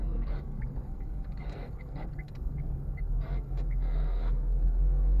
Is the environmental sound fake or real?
fake